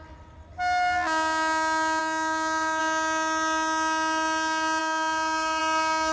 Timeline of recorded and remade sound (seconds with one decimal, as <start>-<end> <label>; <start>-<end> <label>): 0.0-2.0 recorded; 2.0-2.8 remade; 2.8-4.8 recorded; 4.8-5.6 remade; 5.6-6.1 recorded